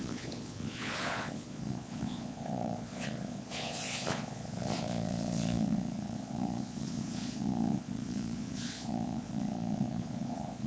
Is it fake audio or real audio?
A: fake